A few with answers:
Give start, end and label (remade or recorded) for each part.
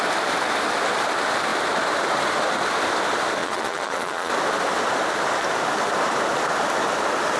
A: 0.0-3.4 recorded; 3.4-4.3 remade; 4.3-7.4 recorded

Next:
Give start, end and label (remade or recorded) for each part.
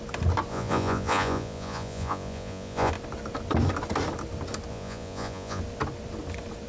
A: 0.0-0.5 recorded; 0.5-2.9 remade; 2.9-4.7 recorded; 4.7-5.6 remade; 5.6-6.7 recorded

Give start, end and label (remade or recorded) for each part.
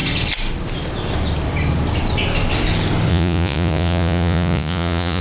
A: 0.0-3.1 recorded; 3.1-5.2 remade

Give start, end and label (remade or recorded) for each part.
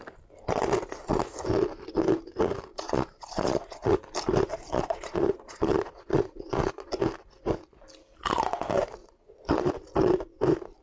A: 0.0-2.7 recorded; 2.7-3.9 remade; 3.9-4.5 recorded; 4.5-6.9 remade; 6.9-9.0 recorded; 9.0-9.7 remade; 9.7-10.8 recorded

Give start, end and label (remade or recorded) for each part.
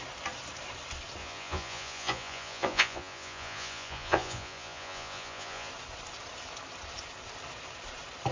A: 0.0-1.2 recorded; 1.2-5.7 remade; 5.7-8.3 recorded